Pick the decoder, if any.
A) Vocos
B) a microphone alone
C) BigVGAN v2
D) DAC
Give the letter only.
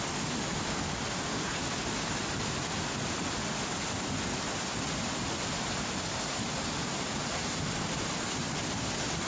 B